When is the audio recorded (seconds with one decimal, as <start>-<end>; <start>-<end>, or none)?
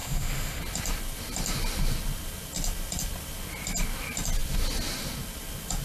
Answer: 0.6-5.8